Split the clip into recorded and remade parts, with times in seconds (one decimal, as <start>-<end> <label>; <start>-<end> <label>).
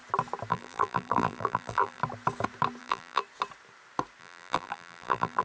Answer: 0.0-0.5 recorded; 0.5-2.0 remade; 2.0-2.8 recorded; 2.8-3.2 remade; 3.2-4.2 recorded; 4.2-5.4 remade